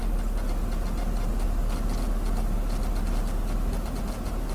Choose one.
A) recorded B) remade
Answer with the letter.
A